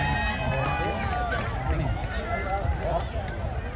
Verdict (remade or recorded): recorded